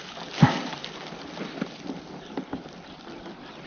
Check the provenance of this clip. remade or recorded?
recorded